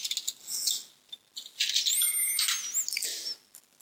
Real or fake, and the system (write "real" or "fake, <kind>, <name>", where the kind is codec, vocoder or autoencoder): real